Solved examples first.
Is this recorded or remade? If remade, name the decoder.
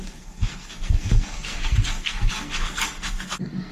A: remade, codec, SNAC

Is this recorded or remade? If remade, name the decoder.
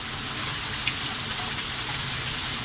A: recorded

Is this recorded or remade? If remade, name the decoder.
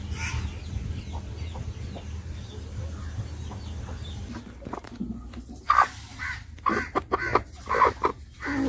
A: recorded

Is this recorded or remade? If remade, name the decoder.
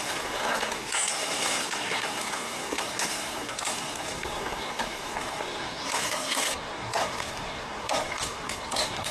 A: remade, codec, SNAC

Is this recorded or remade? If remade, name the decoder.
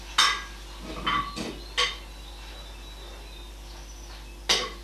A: recorded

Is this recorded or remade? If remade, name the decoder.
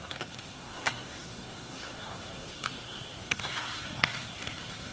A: remade, codec, SNAC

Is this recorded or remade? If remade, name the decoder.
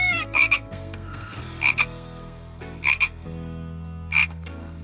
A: remade, codec, SNAC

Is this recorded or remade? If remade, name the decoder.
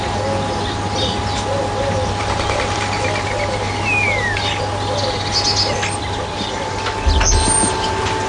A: recorded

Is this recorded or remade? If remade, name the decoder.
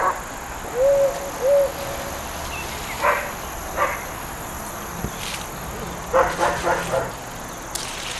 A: recorded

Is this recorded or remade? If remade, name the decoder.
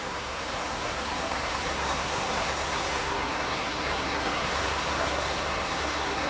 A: remade, codec, SNAC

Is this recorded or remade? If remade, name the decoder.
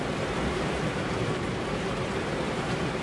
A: recorded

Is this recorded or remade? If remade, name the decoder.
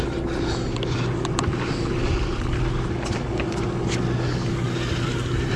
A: recorded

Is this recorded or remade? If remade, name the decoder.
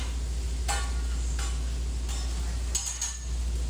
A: recorded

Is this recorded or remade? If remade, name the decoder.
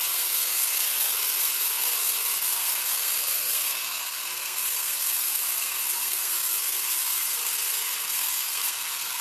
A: remade, codec, SNAC